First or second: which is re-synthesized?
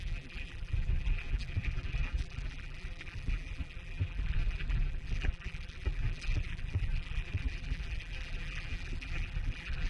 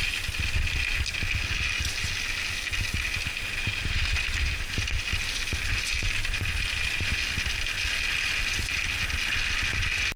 first